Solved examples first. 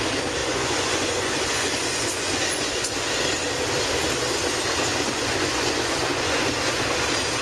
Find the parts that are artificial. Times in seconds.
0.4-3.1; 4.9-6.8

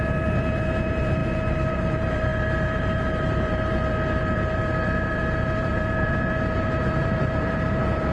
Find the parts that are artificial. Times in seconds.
0.0-8.1

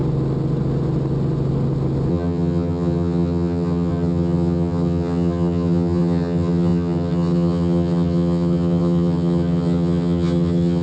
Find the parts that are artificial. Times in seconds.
2.1-10.8

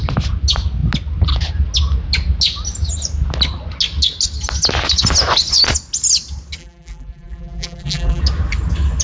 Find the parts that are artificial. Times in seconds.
6.6-8.2

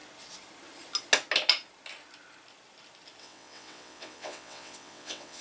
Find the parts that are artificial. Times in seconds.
3.2-5.4

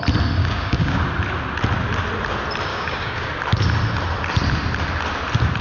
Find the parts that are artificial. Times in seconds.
0.4-1.0; 2.7-3.3